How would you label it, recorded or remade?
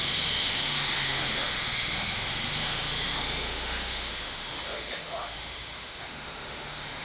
remade